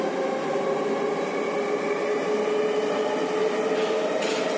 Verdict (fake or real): real